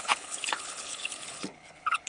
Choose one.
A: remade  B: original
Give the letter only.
A